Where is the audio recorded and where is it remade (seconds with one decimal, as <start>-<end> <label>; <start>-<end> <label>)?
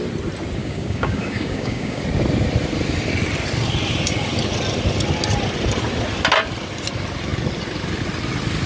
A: 0.0-0.6 recorded; 0.6-2.0 remade; 2.0-8.7 recorded